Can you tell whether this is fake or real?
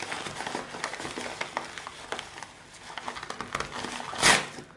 real